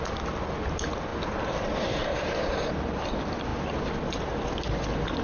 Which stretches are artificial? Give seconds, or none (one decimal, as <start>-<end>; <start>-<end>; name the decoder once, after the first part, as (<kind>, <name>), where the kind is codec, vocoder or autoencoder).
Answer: none